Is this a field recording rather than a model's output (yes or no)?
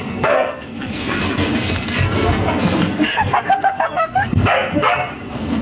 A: no